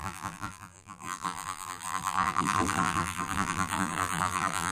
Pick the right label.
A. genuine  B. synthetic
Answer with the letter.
B